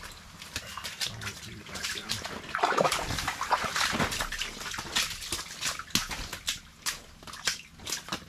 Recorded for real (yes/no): yes